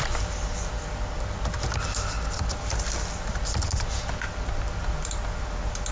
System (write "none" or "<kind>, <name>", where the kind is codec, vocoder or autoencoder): none